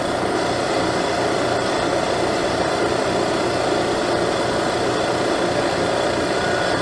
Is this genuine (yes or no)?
yes